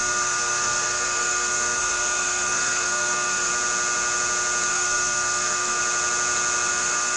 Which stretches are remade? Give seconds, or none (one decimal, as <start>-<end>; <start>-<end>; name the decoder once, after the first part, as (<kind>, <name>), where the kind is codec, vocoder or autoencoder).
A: 0.0-3.5 (codec, SNAC); 4.7-5.8; 6.7-7.2